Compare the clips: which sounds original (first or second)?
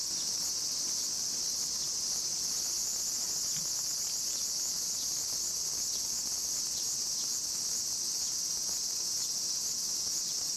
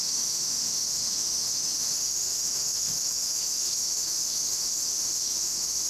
first